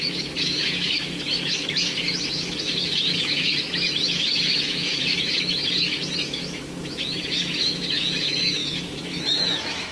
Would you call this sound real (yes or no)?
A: no